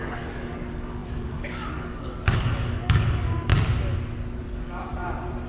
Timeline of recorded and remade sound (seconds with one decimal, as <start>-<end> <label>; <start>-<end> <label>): 0.0-3.5 remade; 3.5-4.4 recorded; 4.4-4.9 remade; 4.9-5.5 recorded

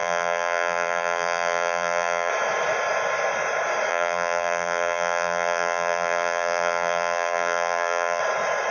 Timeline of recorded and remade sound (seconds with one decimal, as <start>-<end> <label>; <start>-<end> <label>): 0.0-2.3 remade; 2.3-3.9 recorded; 3.9-8.2 remade; 8.2-8.7 recorded

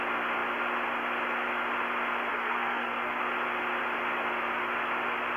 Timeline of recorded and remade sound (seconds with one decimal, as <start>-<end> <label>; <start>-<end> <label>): 0.0-2.3 recorded; 2.3-3.2 remade; 3.2-5.4 recorded